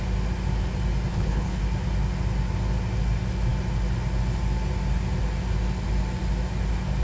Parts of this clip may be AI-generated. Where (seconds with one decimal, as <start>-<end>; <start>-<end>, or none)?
1.1-1.6